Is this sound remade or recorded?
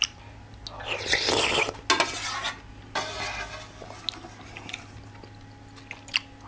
recorded